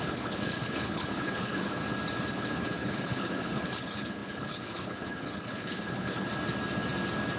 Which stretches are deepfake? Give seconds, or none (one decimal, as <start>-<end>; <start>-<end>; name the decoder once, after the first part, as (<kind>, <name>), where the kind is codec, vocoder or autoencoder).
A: 0.0-1.8 (codec, HILCodec); 2.3-6.3